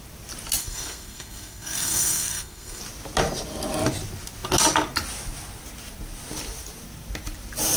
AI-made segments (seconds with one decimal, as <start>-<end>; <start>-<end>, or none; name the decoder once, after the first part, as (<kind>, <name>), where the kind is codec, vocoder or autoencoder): 0.6-2.8 (codec, SNAC)